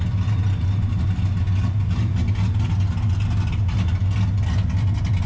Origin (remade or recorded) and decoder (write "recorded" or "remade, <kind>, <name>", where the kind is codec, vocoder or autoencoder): recorded